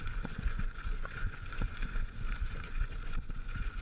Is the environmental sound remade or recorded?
remade